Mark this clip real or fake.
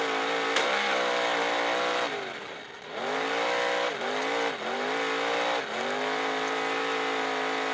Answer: real